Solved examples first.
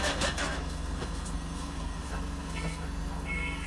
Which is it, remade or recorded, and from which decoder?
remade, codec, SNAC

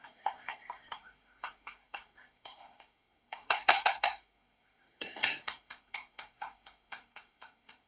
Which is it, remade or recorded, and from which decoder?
remade, codec, SNAC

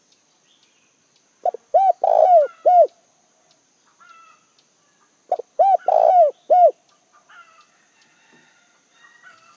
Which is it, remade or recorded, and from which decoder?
recorded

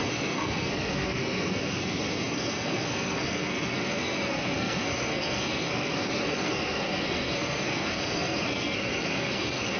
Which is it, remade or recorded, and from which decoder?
remade, codec, SNAC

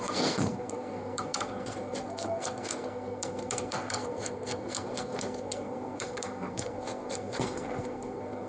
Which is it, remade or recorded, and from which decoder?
remade, codec, SNAC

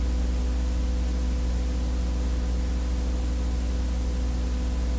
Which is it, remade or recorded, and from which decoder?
recorded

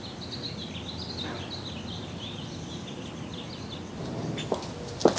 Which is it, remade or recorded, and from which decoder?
recorded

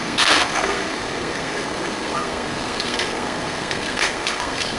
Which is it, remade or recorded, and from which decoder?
remade, codec, SNAC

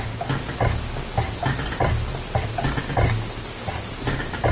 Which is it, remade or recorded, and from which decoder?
recorded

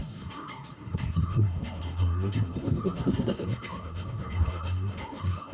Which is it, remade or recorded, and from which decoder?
remade, codec, SNAC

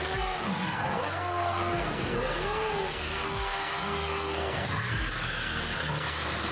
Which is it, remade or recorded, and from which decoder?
remade, codec, SNAC